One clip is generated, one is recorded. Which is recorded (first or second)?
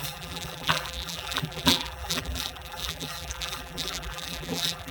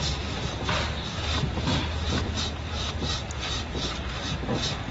second